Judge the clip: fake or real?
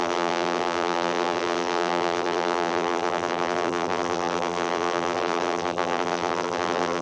fake